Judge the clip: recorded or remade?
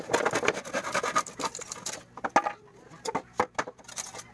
recorded